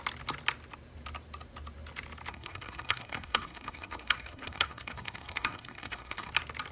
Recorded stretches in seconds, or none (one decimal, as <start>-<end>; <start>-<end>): 0.0-2.3; 6.3-6.7